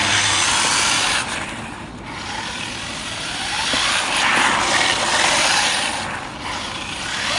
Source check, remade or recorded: recorded